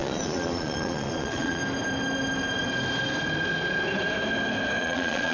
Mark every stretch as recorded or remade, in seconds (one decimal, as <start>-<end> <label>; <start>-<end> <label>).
0.0-1.6 remade; 1.6-4.8 recorded; 4.8-5.3 remade